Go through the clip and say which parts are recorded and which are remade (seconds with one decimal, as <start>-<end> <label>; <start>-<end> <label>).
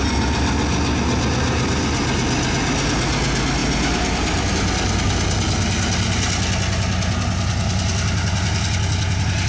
0.0-9.5 recorded